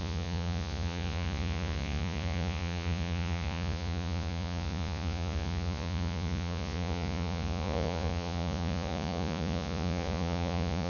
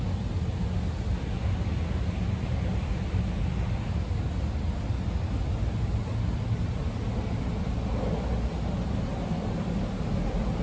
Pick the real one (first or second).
second